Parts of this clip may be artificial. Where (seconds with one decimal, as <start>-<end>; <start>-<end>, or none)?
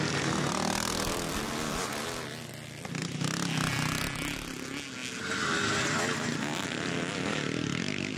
none